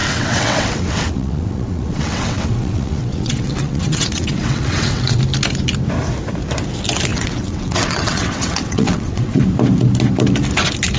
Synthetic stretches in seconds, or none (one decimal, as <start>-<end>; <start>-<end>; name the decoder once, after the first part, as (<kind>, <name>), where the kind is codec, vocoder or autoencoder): 0.0-5.2 (vocoder, WaveNeXt); 7.1-9.4